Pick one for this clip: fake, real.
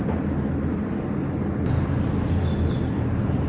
real